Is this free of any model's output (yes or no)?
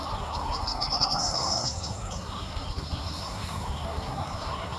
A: no